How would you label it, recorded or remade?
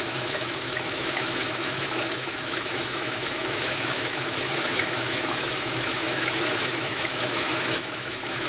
remade